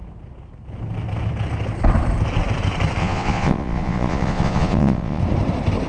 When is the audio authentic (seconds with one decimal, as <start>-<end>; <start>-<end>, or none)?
0.0-3.0; 5.2-5.9